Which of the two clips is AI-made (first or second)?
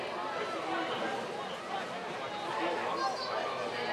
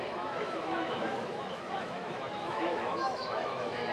second